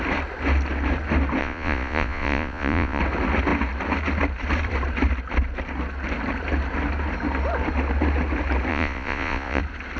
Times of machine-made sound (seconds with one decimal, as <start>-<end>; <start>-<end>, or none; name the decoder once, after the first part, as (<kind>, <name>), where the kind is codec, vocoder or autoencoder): 1.4-3.0 (vocoder, Vocos); 8.7-9.6